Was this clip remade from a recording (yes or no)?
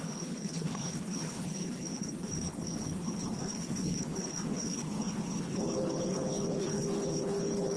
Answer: yes